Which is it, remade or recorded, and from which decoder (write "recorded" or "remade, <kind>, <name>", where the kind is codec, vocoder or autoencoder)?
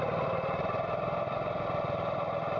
recorded